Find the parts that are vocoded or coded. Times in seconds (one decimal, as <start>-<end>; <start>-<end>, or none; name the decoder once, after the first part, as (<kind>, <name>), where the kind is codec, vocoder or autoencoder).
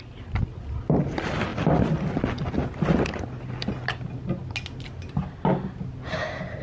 none